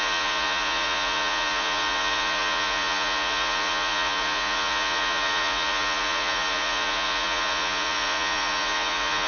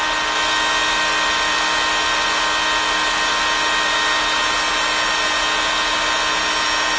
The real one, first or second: second